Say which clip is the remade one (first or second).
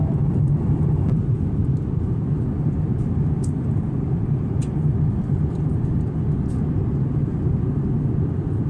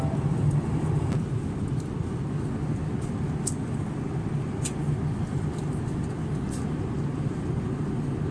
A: first